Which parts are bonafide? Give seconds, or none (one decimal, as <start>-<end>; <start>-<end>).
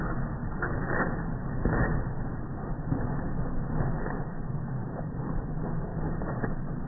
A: 0.0-4.8; 5.5-5.9